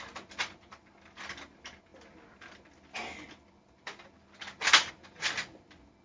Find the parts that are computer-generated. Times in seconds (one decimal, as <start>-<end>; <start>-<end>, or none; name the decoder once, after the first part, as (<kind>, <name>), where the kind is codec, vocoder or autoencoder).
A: none